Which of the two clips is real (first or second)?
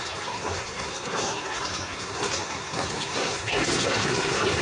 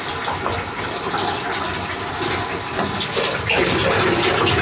second